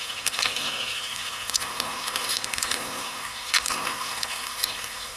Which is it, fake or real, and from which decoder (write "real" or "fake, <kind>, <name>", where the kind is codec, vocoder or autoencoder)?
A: fake, codec, SNAC